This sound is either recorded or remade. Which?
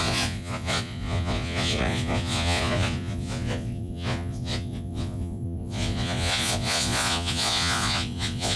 remade